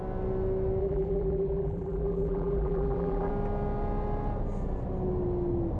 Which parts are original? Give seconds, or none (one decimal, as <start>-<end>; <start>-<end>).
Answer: 0.0-0.8; 3.3-5.8